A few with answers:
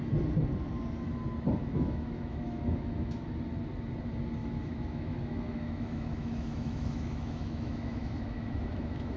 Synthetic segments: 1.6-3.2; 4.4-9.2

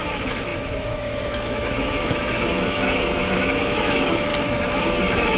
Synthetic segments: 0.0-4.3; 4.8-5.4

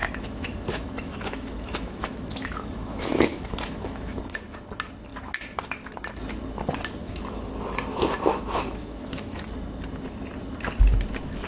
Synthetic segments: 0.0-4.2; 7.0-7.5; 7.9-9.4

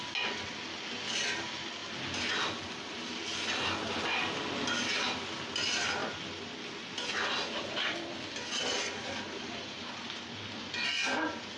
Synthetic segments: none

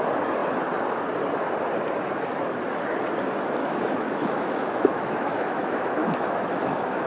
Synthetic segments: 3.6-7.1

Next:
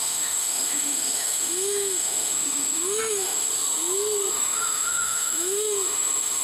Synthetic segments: 0.0-3.5; 4.3-6.4